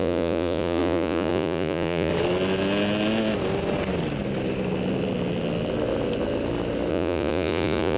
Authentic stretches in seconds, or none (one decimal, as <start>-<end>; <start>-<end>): 2.1-6.9